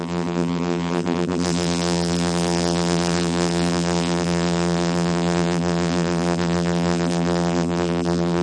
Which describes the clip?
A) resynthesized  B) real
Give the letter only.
A